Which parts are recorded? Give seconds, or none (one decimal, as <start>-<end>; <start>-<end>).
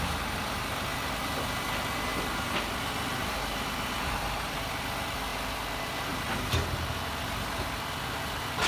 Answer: 0.0-8.7